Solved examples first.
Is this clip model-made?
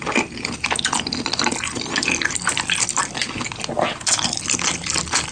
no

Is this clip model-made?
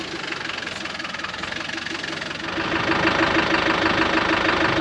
no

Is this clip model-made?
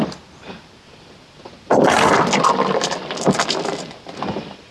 no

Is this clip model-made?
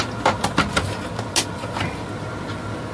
no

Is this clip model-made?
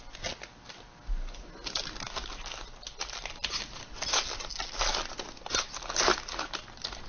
no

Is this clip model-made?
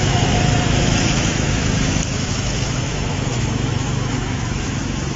yes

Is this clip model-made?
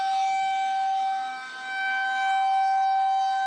yes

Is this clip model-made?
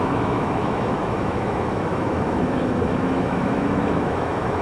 yes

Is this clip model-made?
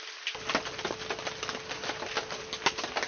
no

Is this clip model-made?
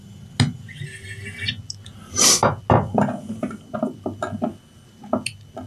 no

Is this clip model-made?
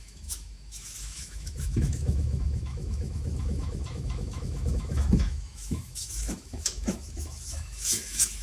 yes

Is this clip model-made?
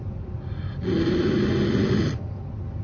no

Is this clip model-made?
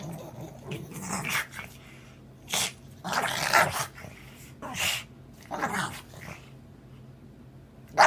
no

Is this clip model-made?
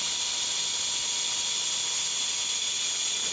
no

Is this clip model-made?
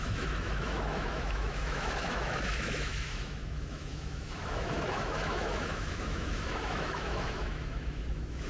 yes